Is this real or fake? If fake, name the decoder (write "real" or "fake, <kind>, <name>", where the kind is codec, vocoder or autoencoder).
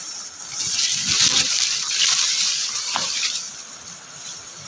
fake, vocoder, BigVGAN v2